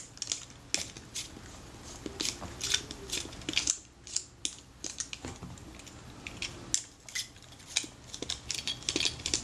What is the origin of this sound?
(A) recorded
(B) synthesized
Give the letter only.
A